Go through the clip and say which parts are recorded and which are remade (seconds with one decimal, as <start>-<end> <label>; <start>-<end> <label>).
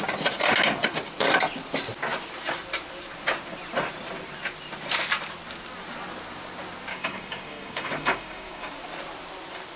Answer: 0.0-6.9 recorded; 6.9-8.7 remade; 8.7-9.8 recorded